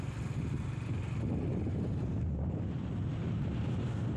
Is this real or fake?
real